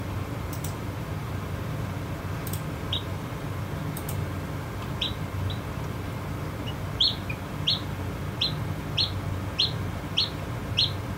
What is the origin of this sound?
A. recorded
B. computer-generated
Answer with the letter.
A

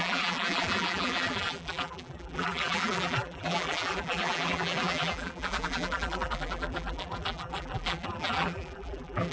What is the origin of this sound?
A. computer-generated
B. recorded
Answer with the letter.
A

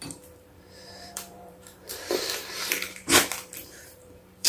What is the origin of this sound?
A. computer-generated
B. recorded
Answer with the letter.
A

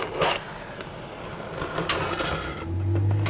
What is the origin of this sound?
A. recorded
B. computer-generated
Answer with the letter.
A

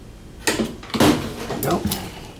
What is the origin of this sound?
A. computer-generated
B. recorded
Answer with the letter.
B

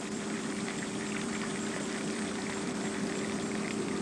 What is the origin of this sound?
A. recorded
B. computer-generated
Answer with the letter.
B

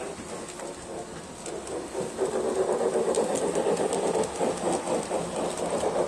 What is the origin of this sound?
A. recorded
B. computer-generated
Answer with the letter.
A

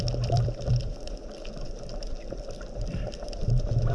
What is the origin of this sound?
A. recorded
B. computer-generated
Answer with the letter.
B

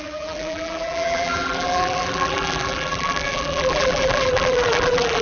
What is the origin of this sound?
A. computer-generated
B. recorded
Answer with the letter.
A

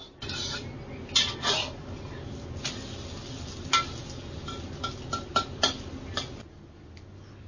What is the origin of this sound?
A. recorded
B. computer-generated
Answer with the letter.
A